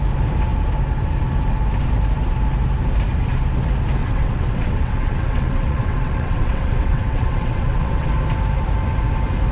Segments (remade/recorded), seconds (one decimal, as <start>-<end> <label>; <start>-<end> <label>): 0.0-4.0 recorded; 4.0-8.1 remade; 8.1-9.5 recorded